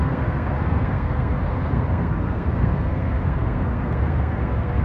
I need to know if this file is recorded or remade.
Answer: remade